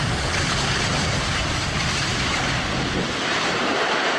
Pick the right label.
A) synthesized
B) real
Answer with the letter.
B